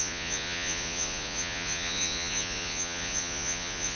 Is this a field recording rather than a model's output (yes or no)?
no